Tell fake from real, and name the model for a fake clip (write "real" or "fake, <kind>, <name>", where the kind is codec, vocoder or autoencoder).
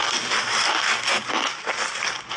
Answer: real